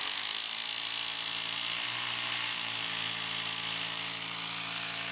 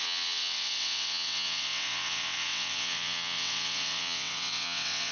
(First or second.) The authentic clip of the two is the first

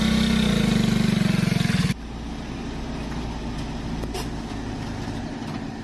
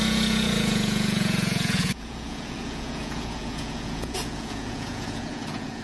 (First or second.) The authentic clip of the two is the first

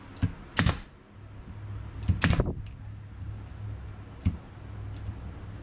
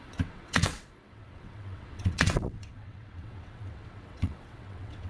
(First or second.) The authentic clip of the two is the first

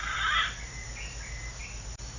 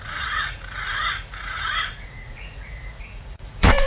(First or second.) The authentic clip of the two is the first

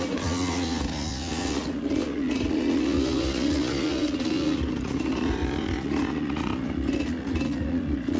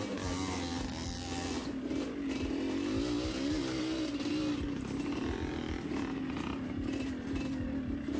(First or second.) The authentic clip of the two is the second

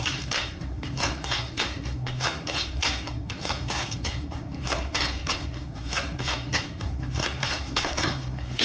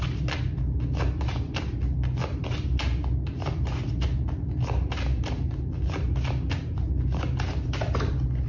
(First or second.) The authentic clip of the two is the second